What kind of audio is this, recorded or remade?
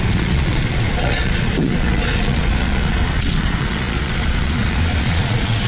remade